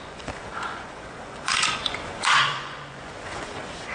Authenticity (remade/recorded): remade